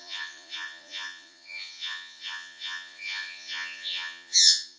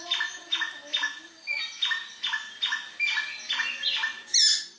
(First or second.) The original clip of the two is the second